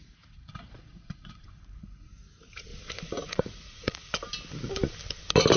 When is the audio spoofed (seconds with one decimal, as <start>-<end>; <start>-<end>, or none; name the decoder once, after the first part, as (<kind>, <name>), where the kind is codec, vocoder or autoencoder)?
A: 0.0-2.7 (vocoder, Vocos); 3.3-4.1